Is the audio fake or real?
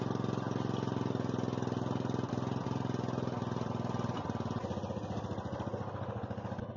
real